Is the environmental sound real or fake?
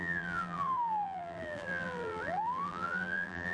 fake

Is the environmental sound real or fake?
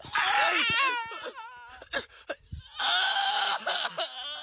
real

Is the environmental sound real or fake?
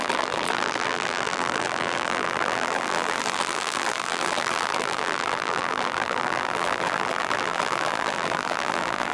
fake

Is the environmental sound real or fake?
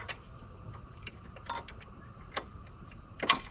real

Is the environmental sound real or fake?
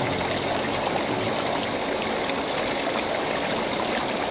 real